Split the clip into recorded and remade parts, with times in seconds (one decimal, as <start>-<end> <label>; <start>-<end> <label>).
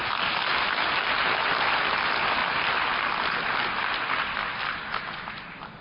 0.0-2.4 recorded; 2.4-5.8 remade